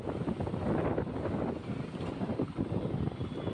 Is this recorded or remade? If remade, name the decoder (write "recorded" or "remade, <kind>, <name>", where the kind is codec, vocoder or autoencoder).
recorded